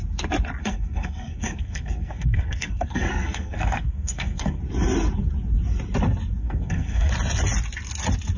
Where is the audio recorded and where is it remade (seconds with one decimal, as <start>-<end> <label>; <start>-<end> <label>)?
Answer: 0.0-0.6 recorded; 0.6-4.6 remade; 4.6-6.4 recorded; 6.4-7.1 remade; 7.1-8.4 recorded